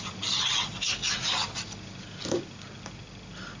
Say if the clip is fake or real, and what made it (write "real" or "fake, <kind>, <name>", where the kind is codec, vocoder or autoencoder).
real